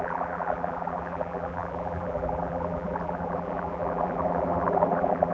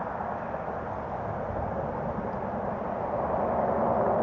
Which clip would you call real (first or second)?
second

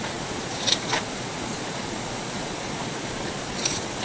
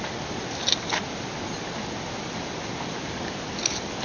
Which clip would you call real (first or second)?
second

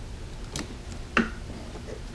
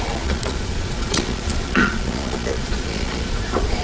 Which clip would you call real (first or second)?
first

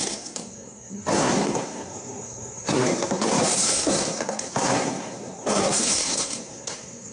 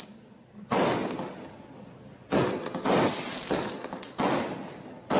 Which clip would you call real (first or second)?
second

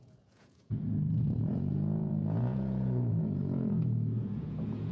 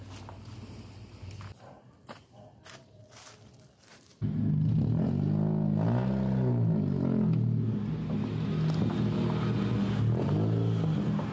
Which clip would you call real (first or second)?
second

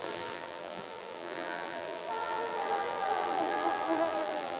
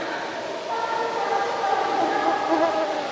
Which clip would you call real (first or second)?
second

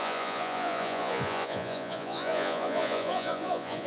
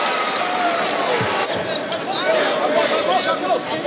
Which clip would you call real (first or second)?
second